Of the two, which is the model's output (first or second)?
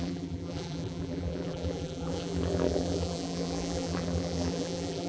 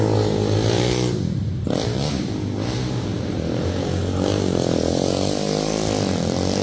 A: first